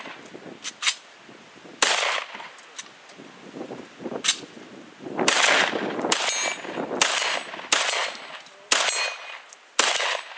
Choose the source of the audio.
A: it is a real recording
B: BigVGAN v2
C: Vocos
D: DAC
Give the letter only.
A